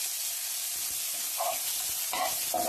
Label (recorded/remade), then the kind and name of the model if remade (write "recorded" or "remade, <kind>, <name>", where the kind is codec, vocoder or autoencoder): recorded